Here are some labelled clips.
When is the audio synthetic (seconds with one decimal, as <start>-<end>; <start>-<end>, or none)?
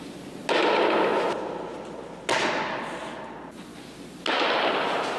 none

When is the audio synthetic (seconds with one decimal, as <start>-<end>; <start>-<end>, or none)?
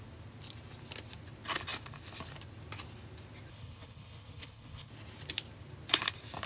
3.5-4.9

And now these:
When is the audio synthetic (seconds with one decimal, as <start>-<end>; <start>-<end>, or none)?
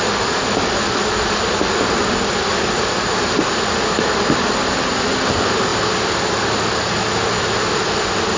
none